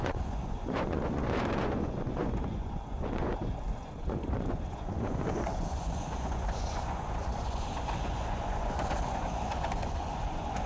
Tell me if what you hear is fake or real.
fake